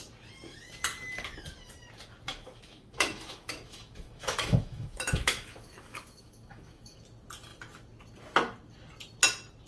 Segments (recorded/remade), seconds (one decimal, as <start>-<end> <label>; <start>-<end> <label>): 0.0-2.3 recorded; 2.3-7.0 remade; 7.0-9.7 recorded

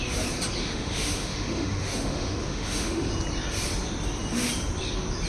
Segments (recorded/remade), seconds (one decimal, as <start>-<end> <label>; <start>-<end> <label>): 0.0-0.6 recorded; 0.6-3.1 remade; 3.1-5.3 recorded

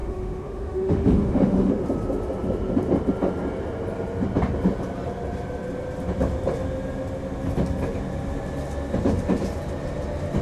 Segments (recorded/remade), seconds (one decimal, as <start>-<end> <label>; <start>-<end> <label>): 0.0-1.7 remade; 1.7-10.4 recorded

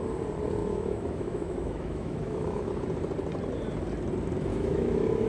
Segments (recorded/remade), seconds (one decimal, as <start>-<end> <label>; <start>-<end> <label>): 0.0-0.6 recorded; 0.6-2.7 remade; 2.7-4.5 recorded; 4.5-5.3 remade

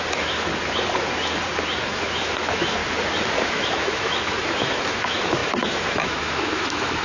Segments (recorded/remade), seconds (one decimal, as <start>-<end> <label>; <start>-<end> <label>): 0.0-0.5 remade; 0.5-2.0 recorded; 2.0-2.8 remade; 2.8-3.4 recorded; 3.4-7.0 remade

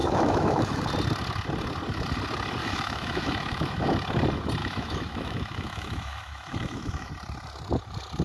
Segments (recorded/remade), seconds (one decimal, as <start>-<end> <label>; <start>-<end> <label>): 0.0-0.8 remade; 0.8-2.6 recorded; 2.6-3.9 remade; 3.9-4.6 recorded; 4.6-7.1 remade; 7.1-8.2 recorded

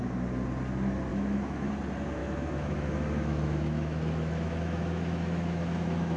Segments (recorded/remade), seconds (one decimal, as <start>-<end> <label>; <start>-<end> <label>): 0.0-1.1 recorded; 1.1-1.7 remade; 1.7-2.2 recorded; 2.2-6.2 remade

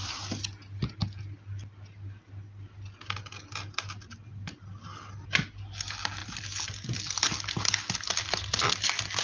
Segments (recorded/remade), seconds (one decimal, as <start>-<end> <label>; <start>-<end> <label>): 0.0-9.2 recorded